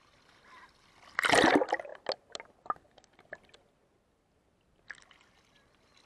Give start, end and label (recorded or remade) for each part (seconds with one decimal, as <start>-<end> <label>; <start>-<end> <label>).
0.0-6.1 recorded